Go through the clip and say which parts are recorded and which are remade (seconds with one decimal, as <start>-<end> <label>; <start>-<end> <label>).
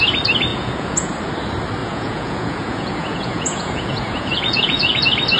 0.0-0.5 recorded; 0.5-1.1 remade; 1.1-1.8 recorded; 1.8-5.0 remade; 5.0-5.4 recorded